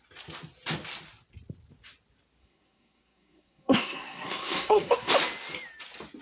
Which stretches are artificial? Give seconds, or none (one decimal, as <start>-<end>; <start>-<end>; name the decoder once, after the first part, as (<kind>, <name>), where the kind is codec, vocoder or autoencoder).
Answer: 2.4-5.1 (codec, SNAC)